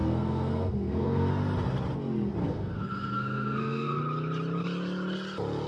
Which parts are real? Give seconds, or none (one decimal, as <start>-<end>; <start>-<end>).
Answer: 1.3-2.4; 4.0-5.7